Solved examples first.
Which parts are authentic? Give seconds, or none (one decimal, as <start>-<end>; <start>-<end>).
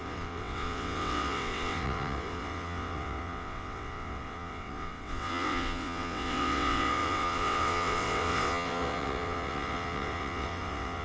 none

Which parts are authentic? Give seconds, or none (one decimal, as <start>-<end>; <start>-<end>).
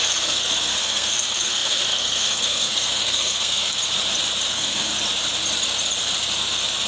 3.8-4.5; 4.9-6.9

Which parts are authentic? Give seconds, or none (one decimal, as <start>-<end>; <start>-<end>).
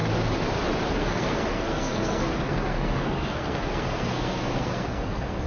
0.0-0.9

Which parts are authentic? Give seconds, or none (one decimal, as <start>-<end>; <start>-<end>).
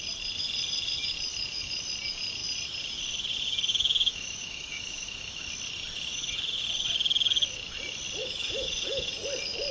0.0-3.7; 5.5-6.1; 6.6-8.2; 9.1-9.7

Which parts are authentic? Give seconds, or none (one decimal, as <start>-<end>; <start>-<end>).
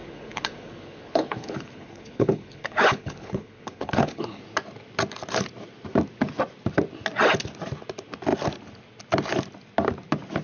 4.4-10.4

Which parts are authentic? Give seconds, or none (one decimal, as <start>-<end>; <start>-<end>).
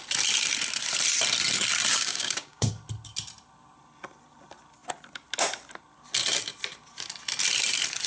0.0-1.9; 2.7-8.1